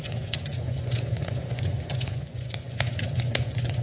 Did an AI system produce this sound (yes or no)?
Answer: yes